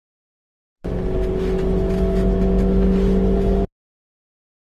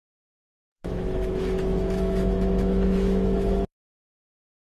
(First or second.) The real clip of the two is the first